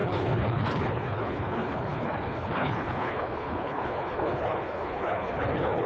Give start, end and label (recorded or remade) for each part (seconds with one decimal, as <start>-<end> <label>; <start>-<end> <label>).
0.0-5.9 remade